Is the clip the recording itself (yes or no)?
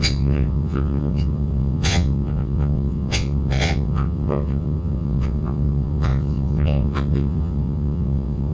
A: no